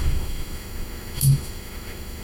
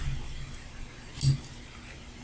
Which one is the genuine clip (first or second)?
second